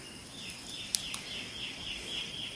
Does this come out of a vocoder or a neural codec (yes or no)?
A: no